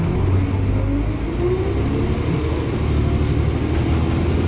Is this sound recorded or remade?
recorded